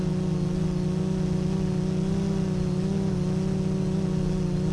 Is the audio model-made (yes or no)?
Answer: no